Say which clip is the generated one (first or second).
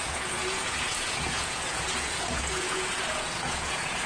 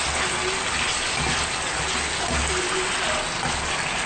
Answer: first